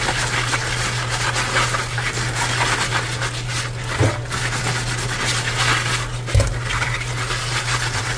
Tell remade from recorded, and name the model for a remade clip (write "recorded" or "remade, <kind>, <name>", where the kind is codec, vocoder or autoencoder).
recorded